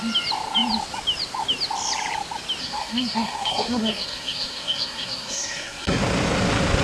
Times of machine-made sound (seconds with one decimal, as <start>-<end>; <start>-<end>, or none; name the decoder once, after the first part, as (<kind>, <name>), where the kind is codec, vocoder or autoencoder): 2.6-6.0 (codec, SNAC)